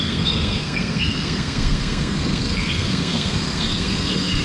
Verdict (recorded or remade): remade